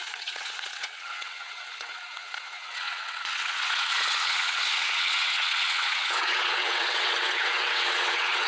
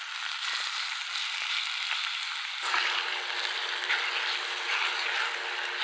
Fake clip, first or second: first